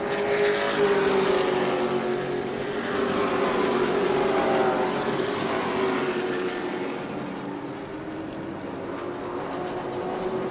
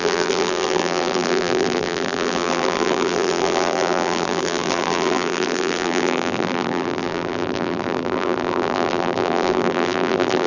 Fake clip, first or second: second